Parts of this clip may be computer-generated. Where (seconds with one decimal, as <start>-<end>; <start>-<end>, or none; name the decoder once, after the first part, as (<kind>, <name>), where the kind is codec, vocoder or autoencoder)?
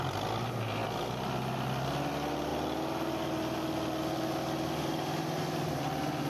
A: none